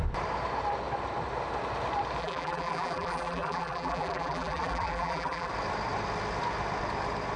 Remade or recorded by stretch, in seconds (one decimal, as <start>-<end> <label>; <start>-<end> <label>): 0.0-2.2 recorded; 2.2-5.5 remade; 5.5-7.4 recorded